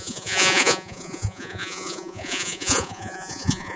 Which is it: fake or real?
fake